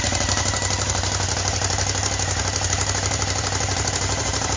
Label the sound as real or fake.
fake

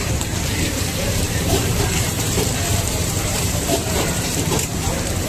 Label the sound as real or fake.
fake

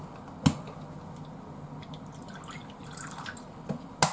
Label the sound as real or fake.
real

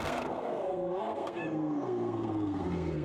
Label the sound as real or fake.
fake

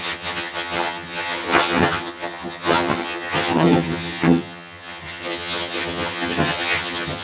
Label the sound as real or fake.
fake